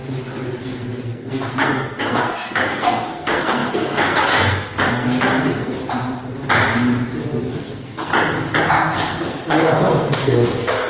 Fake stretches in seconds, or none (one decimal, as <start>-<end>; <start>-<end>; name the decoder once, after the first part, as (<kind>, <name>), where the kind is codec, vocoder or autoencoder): 0.6-5.8 (codec, SNAC); 7.5-8.1; 8.7-10.9